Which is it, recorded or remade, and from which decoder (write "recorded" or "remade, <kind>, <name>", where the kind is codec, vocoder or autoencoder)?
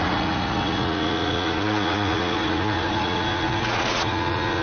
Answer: remade, vocoder, Vocos